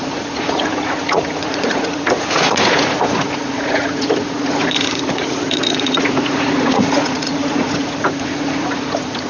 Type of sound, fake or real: fake